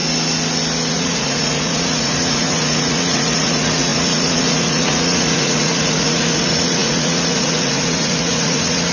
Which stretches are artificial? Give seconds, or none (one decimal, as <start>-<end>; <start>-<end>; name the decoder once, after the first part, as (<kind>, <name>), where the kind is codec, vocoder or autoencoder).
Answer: 0.9-8.9 (vocoder, Vocos)